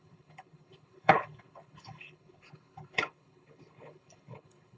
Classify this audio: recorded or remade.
remade